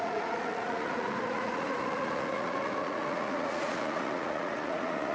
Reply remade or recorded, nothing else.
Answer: remade